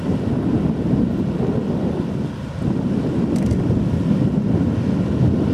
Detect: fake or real real